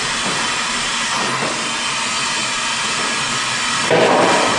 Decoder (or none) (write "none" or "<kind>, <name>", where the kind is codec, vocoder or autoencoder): none